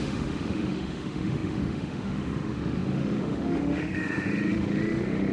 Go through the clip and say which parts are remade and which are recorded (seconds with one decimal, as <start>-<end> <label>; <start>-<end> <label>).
0.0-5.3 remade